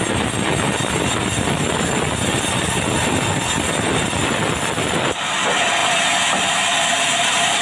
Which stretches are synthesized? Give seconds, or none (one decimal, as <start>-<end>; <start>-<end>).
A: none